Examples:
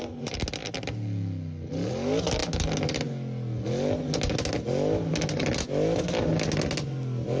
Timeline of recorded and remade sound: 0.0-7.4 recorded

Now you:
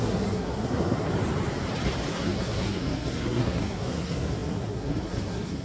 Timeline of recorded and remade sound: 0.0-1.1 remade; 1.1-2.1 recorded; 2.1-5.6 remade